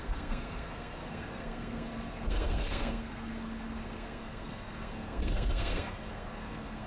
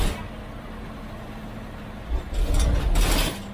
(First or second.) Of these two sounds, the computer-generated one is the first